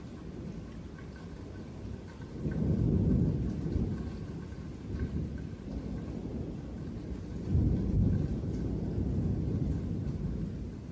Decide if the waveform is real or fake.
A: real